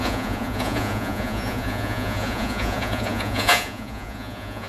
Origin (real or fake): fake